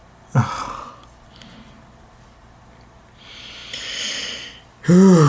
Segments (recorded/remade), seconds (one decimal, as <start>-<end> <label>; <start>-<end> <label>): 0.0-5.3 recorded